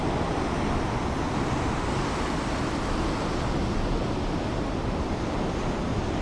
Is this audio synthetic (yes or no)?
no